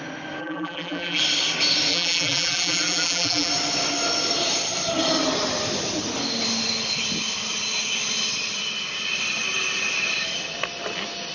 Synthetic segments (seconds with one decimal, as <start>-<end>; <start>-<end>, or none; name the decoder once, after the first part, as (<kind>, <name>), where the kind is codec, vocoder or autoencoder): 0.4-1.2 (vocoder, BigVGAN v2); 1.9-3.5